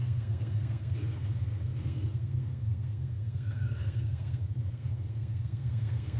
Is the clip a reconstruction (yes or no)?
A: yes